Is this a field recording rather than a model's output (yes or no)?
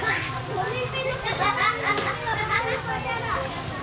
yes